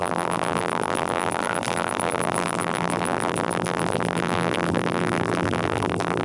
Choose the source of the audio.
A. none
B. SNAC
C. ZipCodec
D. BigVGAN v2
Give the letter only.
D